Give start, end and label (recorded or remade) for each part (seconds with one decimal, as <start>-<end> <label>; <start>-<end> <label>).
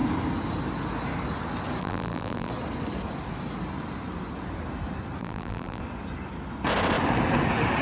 0.0-1.8 recorded; 1.8-2.5 remade; 2.5-5.2 recorded; 5.2-5.8 remade; 5.8-7.8 recorded